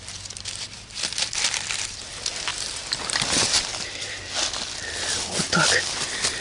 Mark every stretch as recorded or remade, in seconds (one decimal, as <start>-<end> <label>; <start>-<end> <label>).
0.0-6.4 remade